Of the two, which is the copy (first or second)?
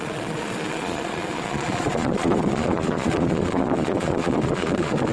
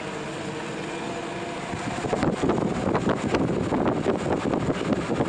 first